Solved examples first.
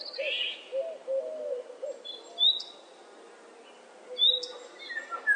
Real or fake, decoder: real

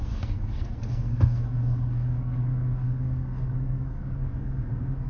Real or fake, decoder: fake, codec, SNAC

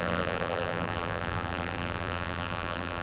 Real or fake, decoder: fake, vocoder, BigVGAN v2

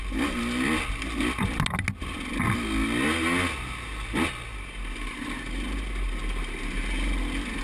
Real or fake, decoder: real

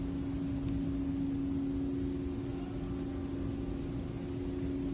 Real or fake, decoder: real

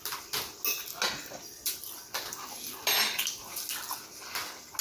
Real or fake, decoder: real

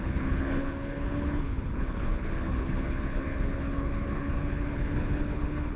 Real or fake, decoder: fake, codec, HILCodec